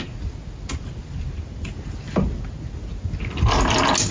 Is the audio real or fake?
real